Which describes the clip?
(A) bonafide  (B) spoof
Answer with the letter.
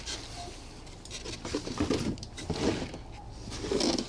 A